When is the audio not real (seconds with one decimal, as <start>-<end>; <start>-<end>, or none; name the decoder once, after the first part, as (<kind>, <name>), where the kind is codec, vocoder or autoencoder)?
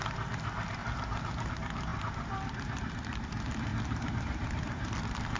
0.8-1.5 (vocoder, BigVGAN v2); 1.9-2.9; 3.7-4.9